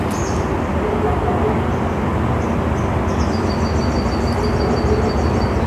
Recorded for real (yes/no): yes